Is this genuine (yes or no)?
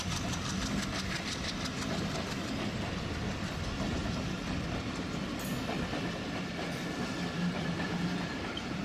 yes